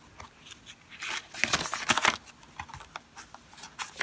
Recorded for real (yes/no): yes